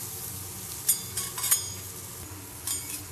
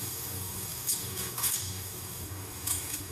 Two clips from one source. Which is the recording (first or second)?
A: first